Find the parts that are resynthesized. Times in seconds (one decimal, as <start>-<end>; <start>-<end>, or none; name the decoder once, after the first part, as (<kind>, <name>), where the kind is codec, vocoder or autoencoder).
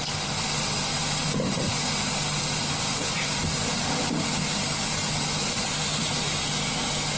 none